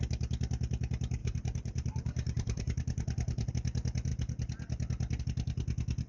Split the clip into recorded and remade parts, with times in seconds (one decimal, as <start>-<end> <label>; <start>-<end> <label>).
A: 0.0-1.2 recorded; 1.2-3.5 remade; 3.5-6.1 recorded